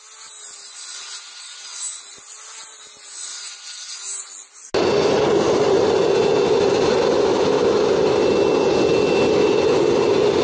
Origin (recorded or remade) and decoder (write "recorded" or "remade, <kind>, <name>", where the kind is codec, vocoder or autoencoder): recorded